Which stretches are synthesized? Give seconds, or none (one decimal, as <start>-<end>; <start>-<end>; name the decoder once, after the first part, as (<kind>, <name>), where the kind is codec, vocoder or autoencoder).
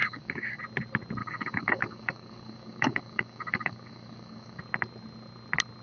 0.0-0.6 (codec, DAC); 1.2-4.6